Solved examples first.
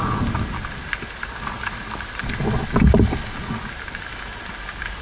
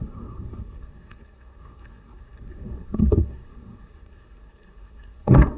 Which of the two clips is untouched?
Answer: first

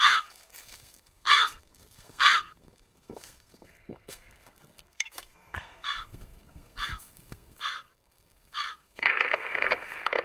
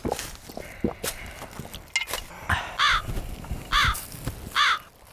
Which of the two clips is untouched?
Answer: second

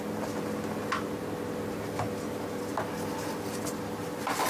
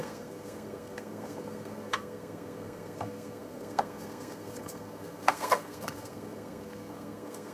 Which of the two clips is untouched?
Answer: first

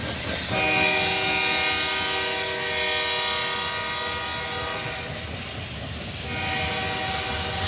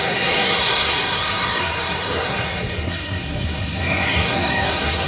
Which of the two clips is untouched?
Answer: first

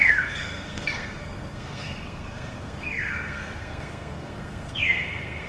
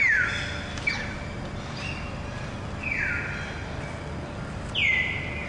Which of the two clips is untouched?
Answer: second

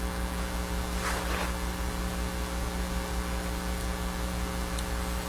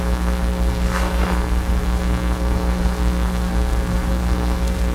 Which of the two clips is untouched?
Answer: first